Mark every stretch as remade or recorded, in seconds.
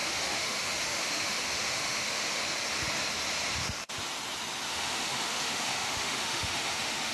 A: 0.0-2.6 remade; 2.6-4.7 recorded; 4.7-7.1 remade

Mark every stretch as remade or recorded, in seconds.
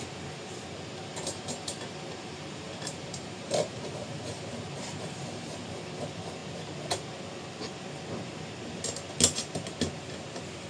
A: 0.0-1.1 recorded; 1.1-5.6 remade; 5.6-10.7 recorded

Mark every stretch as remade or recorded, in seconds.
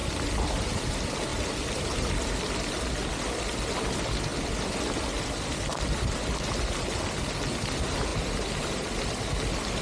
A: 0.0-1.3 recorded; 1.3-2.1 remade; 2.1-9.8 recorded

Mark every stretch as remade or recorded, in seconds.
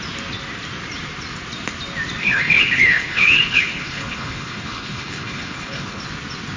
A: 0.0-2.2 recorded; 2.2-6.0 remade; 6.0-6.6 recorded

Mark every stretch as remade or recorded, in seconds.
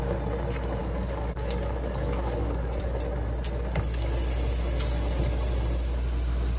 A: 0.0-0.8 recorded; 0.8-2.8 remade; 2.8-6.6 recorded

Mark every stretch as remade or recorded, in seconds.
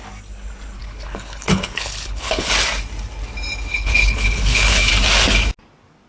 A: 0.0-0.8 recorded; 0.8-2.5 remade; 2.5-3.7 recorded; 3.7-4.9 remade; 4.9-6.1 recorded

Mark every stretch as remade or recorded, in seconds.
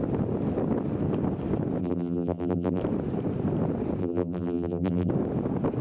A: 0.0-1.8 recorded; 1.8-2.8 remade; 2.8-4.0 recorded; 4.0-5.1 remade; 5.1-5.8 recorded